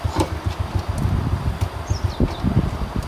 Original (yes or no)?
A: yes